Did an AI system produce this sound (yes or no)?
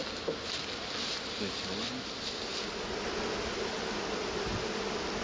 no